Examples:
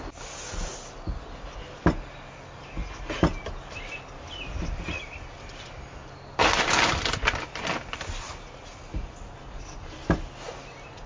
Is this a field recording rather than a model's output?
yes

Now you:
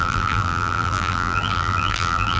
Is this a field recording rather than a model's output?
no